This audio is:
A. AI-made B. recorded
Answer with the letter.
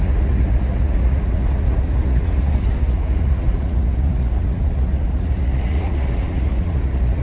A